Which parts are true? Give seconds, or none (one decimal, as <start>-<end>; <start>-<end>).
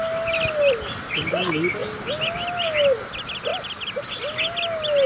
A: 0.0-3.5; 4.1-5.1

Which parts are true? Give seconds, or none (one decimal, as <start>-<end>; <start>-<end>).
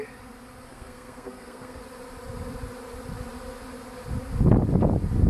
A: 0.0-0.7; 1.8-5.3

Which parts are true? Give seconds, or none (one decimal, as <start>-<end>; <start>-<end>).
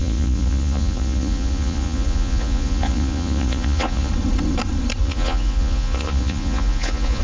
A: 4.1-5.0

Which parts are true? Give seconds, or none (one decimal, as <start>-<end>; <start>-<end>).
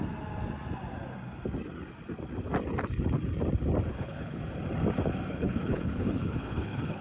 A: 0.0-3.9; 4.4-5.3